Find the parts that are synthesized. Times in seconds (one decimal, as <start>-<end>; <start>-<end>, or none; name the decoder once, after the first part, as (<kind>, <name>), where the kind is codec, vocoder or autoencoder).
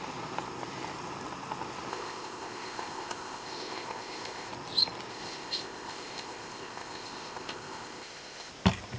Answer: 1.9-4.5 (codec, ZipCodec); 5.1-8.5